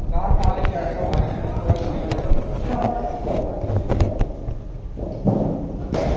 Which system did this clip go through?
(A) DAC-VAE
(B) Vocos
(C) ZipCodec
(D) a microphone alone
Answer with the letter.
D